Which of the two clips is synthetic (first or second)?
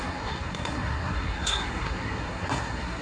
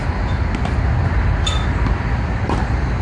first